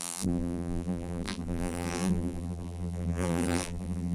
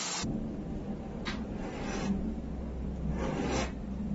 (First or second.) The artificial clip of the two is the first